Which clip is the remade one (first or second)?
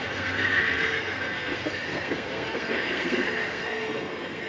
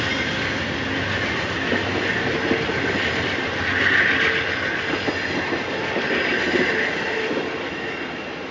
first